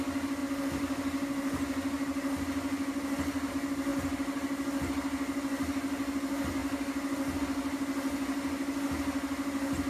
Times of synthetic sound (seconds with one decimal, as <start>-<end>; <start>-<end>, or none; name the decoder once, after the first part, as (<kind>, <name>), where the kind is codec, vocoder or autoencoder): none